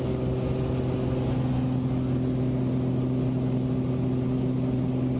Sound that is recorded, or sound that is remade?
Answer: recorded